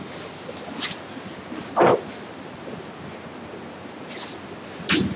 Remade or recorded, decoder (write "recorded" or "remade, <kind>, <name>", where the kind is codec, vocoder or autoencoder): recorded